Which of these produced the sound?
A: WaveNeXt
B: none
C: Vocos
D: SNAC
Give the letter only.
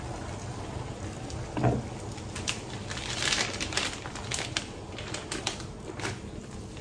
B